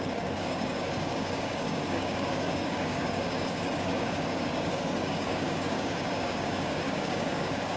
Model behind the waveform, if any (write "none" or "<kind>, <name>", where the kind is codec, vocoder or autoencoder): codec, DAC